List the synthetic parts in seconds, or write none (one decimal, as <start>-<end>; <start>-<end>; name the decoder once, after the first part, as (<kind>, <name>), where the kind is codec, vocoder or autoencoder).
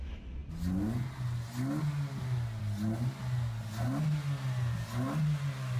none